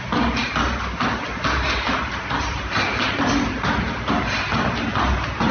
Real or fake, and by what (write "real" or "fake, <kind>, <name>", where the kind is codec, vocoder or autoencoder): real